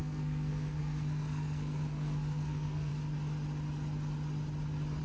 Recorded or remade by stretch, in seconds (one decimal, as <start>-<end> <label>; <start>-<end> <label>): 0.0-2.9 remade; 2.9-5.0 recorded